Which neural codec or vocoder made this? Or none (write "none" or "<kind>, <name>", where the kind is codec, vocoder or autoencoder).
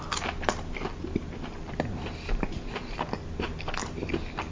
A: none